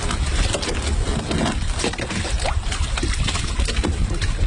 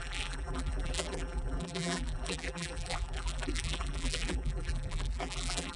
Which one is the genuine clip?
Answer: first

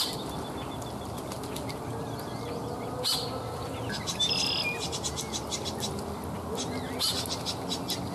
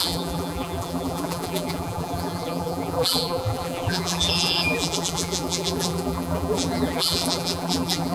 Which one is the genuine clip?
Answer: first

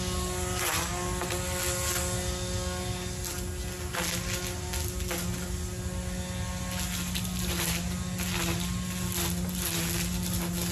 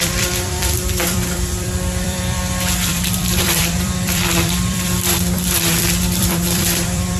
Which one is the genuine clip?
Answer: first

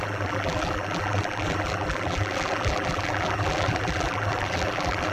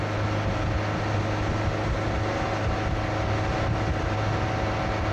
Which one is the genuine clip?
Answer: second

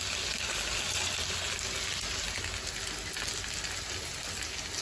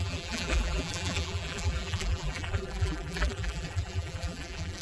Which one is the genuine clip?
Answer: first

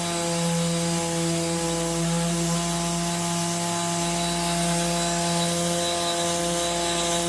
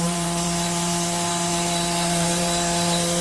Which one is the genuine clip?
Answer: first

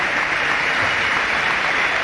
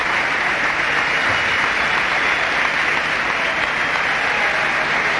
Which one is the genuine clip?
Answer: second